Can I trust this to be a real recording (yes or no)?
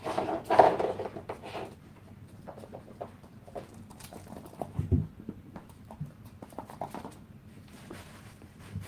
no